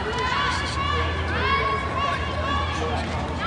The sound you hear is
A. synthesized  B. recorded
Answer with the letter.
B